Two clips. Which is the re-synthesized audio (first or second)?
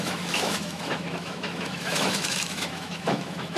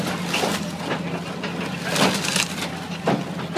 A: first